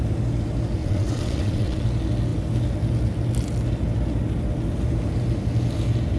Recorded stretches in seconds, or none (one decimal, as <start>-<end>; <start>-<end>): 0.0-0.8; 1.8-6.2